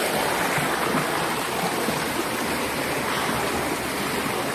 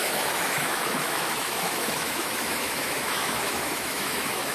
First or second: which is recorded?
first